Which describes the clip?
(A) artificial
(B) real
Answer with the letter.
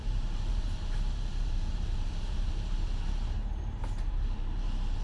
A